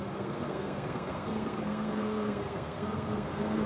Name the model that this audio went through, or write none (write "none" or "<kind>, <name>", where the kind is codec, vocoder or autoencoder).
codec, SNAC